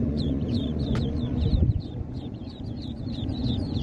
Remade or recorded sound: remade